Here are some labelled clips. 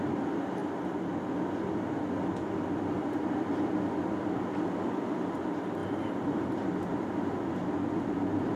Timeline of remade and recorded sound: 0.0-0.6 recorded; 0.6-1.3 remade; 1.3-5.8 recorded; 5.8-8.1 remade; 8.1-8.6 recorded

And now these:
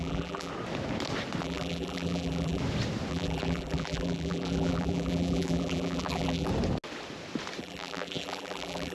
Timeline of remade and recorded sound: 0.0-0.5 remade; 0.5-1.4 recorded; 1.4-2.6 remade; 2.6-3.1 recorded; 3.1-6.5 remade; 6.5-7.6 recorded; 7.6-8.9 remade

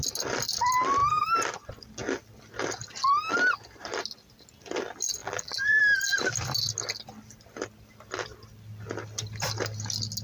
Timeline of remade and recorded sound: 0.0-5.2 recorded; 5.2-5.8 remade; 5.8-10.2 recorded

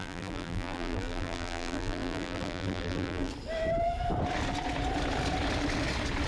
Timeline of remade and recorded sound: 0.0-3.3 remade; 3.3-6.3 recorded

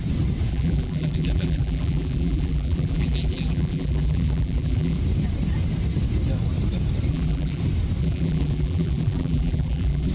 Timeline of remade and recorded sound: 0.0-0.5 recorded; 0.5-5.0 remade; 5.0-7.1 recorded; 7.1-7.6 remade; 7.6-8.0 recorded; 8.0-10.1 remade